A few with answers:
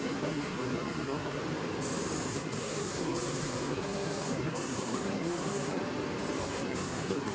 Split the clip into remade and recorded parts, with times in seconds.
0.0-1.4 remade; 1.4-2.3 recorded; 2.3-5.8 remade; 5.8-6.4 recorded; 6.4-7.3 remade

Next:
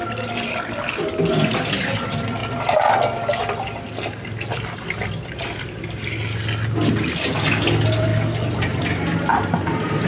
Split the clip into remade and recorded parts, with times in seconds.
0.0-9.3 recorded; 9.3-10.1 remade

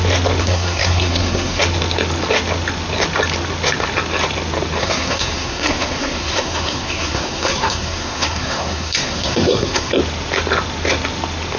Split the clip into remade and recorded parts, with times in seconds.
0.0-0.4 recorded; 0.4-1.6 remade; 1.6-4.8 recorded; 4.8-9.9 remade; 9.9-11.6 recorded

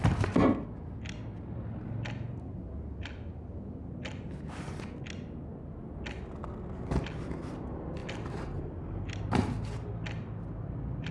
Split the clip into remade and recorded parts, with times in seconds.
0.0-11.1 recorded

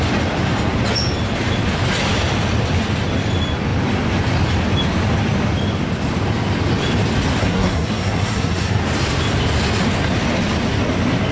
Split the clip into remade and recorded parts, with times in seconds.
0.0-7.4 recorded; 7.4-8.8 remade; 8.8-11.3 recorded

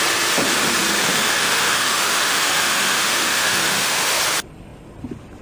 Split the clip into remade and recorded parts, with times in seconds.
0.0-1.0 recorded; 1.0-4.2 remade; 4.2-5.4 recorded

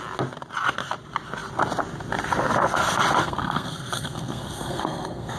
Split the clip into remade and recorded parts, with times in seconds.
0.0-3.2 recorded; 3.2-5.4 remade